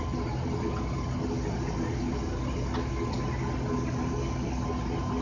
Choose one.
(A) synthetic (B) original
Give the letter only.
B